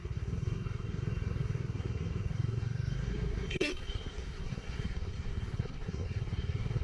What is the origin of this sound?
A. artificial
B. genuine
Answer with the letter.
A